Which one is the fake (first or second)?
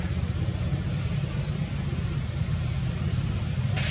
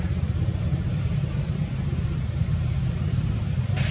second